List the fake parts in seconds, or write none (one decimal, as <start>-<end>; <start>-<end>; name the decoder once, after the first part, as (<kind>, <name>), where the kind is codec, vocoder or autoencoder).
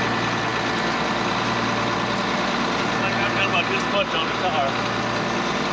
none